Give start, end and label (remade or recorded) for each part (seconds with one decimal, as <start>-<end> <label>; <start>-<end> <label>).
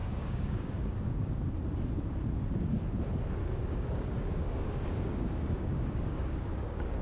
0.0-1.4 remade; 1.4-3.4 recorded; 3.4-7.0 remade